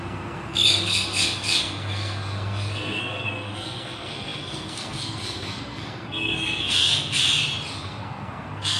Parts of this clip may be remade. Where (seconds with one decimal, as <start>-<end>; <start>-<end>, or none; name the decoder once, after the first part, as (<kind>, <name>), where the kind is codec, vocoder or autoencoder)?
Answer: 0.0-7.2 (codec, SNAC); 7.8-8.8